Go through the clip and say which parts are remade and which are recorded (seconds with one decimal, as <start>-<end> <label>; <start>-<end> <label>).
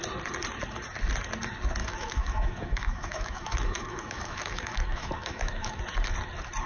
0.0-1.8 recorded; 1.8-5.8 remade; 5.8-6.7 recorded